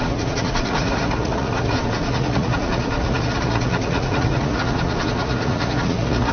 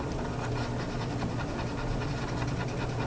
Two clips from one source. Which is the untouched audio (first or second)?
second